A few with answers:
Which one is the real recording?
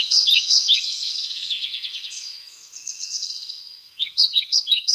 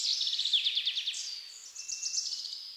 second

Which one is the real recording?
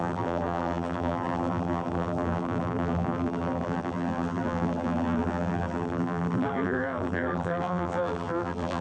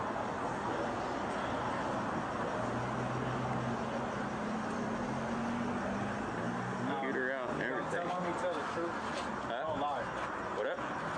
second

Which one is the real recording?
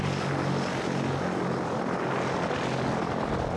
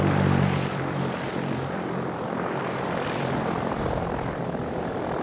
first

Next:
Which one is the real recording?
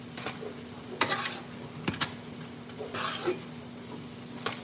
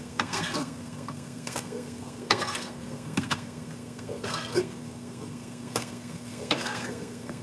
first